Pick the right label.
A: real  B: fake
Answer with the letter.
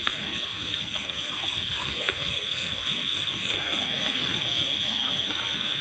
B